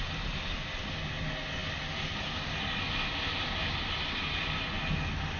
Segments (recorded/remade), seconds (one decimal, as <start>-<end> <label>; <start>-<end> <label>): 0.0-5.4 recorded